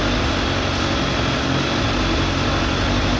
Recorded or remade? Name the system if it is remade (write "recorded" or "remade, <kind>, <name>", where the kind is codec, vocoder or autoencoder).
recorded